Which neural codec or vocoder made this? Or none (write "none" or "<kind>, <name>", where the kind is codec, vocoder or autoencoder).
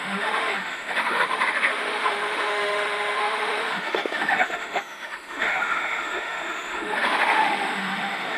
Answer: autoencoder, DAC-VAE